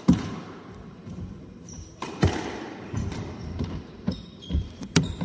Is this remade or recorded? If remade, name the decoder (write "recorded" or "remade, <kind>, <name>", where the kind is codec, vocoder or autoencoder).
remade, vocoder, BigVGAN v2